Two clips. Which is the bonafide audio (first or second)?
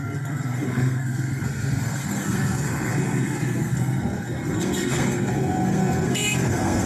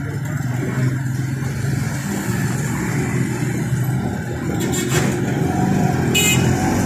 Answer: second